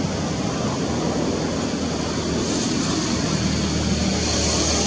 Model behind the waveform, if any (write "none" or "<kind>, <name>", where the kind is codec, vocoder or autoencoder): none